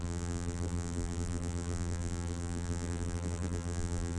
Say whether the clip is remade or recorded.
remade